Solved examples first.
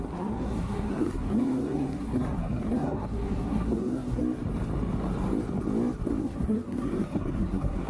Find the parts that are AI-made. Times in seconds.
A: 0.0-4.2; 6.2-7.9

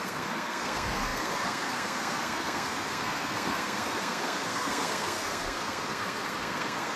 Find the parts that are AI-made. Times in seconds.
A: 0.0-7.0

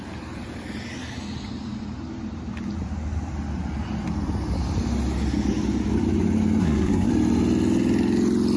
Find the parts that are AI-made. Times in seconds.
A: 6.6-7.1

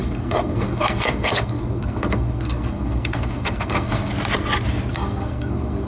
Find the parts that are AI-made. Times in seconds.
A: 0.0-4.1; 4.9-5.9

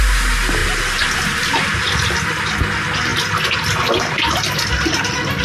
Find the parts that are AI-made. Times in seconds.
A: none

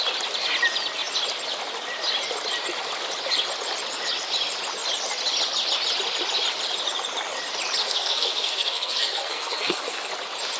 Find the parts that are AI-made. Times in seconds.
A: 7.8-10.1

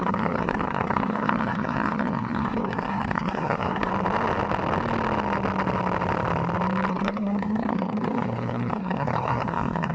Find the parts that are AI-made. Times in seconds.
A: 0.0-3.9; 6.9-9.9

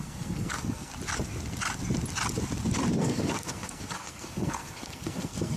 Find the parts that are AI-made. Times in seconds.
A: 0.0-0.9; 3.0-5.6